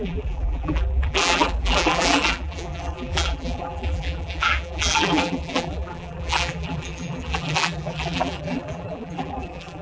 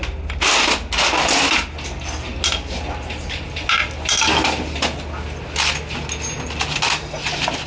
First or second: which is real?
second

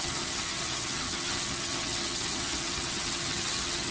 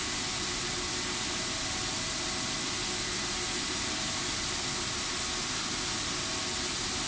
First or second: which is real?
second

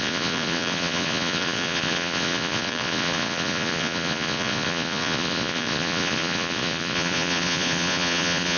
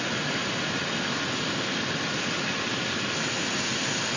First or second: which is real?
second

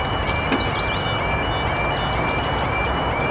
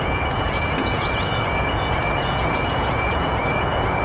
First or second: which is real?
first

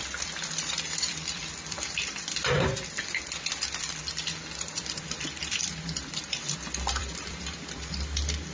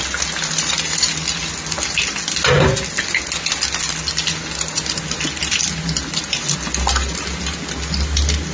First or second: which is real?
second